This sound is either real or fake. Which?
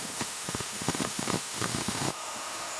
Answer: fake